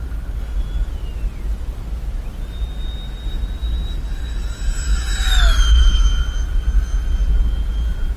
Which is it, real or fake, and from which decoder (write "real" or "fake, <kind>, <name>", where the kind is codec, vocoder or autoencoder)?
real